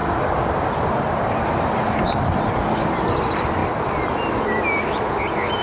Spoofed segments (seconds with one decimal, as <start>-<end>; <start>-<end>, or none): 0.0-2.5; 3.6-4.6